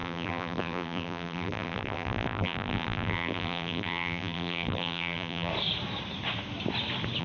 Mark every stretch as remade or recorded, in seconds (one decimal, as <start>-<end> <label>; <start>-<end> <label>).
0.0-5.5 remade; 5.5-7.2 recorded